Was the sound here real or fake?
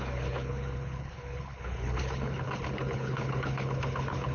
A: fake